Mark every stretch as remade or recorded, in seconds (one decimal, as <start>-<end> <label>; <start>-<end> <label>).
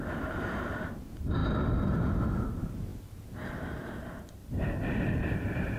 0.0-1.4 remade; 1.4-2.2 recorded; 2.2-2.9 remade; 2.9-3.5 recorded; 3.5-4.4 remade; 4.4-5.2 recorded; 5.2-5.8 remade